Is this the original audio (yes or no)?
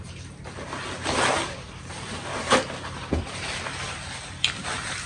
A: no